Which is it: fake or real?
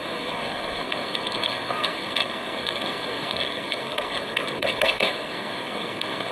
fake